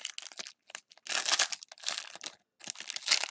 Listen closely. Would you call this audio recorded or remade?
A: recorded